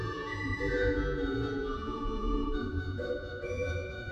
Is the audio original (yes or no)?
no